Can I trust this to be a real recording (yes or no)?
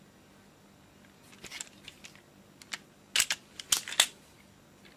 yes